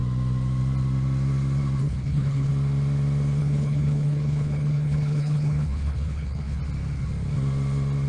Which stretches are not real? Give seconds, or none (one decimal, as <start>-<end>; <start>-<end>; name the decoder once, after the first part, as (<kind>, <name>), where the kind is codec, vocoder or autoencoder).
1.8-2.5 (codec, HILCodec); 3.4-6.6